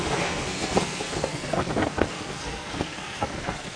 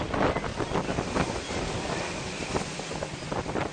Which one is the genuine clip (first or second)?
second